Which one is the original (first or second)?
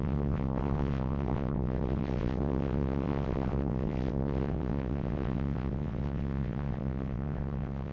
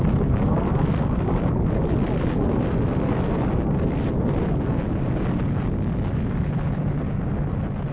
second